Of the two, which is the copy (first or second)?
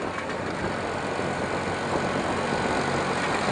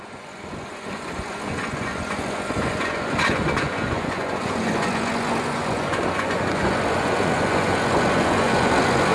second